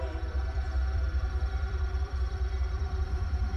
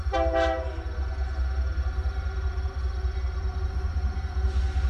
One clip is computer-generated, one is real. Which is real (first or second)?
second